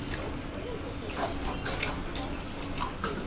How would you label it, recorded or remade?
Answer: recorded